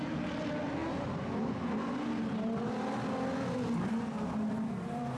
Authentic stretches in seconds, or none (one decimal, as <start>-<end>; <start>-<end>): 0.0-5.2